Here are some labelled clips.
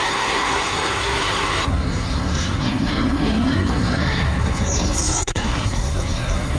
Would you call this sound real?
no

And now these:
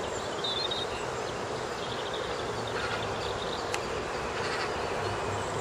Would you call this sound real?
yes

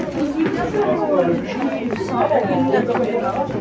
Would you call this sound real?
yes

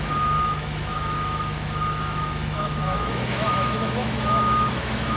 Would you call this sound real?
no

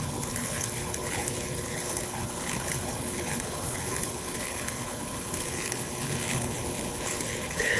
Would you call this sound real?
no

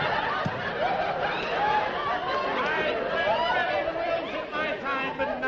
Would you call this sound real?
yes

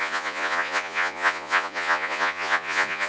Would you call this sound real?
no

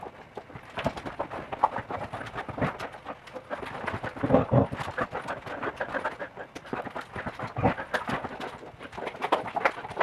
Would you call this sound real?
yes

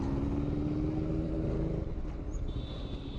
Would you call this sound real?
yes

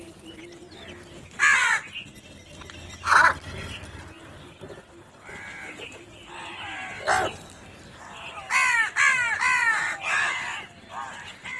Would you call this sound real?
yes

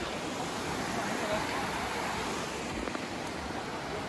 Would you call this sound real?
yes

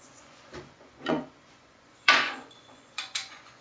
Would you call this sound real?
no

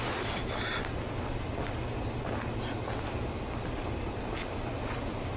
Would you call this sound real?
yes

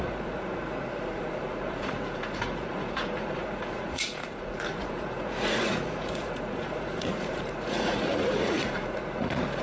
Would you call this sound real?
no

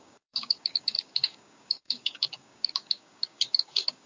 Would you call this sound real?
no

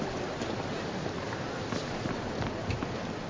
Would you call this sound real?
yes